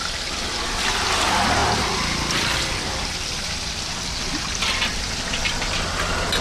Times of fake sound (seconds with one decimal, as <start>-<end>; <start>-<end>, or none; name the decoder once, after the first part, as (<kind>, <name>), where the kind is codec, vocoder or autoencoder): none

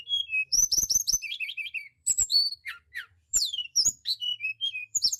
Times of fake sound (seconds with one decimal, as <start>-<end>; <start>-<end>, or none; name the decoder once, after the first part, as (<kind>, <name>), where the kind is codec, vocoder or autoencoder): 0.0-5.2 (vocoder, BigVGAN v2)

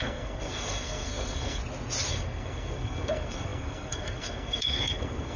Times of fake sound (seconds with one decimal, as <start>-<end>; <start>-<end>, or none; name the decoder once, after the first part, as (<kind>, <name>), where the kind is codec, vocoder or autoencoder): 0.0-1.6 (codec, SNAC); 2.1-5.4

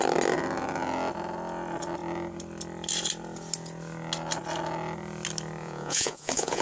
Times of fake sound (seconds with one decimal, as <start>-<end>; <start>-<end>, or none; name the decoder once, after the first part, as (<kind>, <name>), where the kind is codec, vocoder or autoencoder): 5.6-6.6 (vocoder, Vocos)

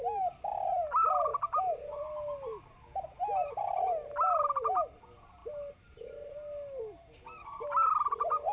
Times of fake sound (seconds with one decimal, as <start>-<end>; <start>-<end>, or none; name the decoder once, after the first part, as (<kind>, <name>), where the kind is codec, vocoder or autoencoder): none

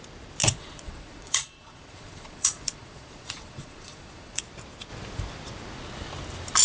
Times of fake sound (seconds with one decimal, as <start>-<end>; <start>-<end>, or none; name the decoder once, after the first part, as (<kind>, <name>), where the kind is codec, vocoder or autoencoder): 0.4-4.4 (vocoder, Vocos)

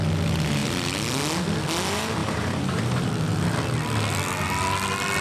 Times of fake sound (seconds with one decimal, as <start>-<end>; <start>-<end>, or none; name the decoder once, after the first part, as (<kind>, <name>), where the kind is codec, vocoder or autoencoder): 2.2-3.1 (vocoder, BigVGAN v2)

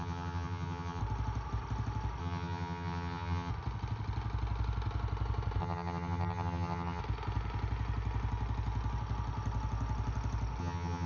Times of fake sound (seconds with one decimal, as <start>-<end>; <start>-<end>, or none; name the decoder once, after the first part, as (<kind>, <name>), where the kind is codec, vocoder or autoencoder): 0.0-1.0 (vocoder, HiFi-GAN); 2.2-3.5; 5.6-7.0; 10.6-11.1